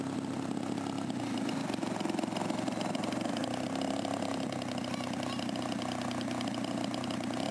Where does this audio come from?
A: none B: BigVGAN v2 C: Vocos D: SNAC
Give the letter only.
A